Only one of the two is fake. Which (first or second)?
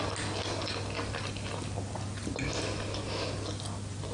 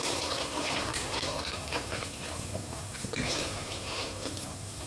second